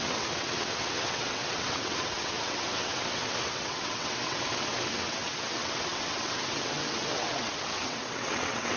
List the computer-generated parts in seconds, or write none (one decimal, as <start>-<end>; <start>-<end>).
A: 0.0-8.8